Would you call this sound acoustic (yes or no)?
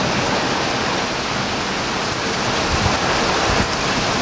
yes